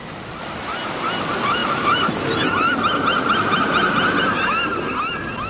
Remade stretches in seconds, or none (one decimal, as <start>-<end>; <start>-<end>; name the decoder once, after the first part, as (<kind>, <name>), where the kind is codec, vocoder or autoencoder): none